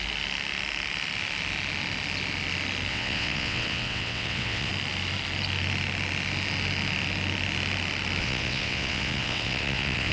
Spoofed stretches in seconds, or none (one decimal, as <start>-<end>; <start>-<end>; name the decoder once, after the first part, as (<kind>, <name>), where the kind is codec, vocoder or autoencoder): 2.9-4.7 (vocoder, WaveNeXt); 8.2-10.1